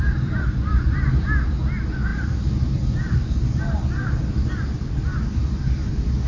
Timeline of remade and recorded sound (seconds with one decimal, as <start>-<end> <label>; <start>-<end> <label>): 0.0-6.3 recorded